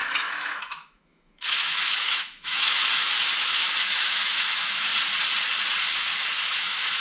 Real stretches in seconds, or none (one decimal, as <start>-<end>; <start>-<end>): 2.8-3.4; 4.9-6.4